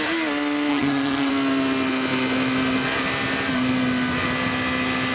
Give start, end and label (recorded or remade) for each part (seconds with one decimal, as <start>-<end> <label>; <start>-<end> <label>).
0.0-0.7 recorded; 0.7-1.3 remade; 1.3-5.1 recorded